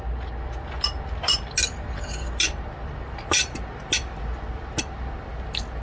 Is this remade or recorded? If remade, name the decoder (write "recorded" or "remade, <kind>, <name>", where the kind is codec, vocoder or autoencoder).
recorded